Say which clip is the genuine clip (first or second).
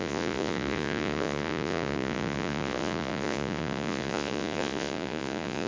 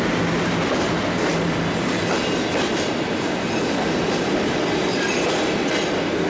second